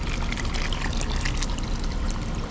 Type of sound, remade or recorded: remade